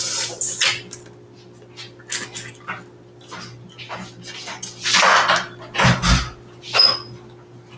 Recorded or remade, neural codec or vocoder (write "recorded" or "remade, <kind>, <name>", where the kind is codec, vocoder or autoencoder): recorded